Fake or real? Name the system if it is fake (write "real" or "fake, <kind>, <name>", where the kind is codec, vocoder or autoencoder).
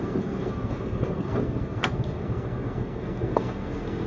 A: fake, codec, SNAC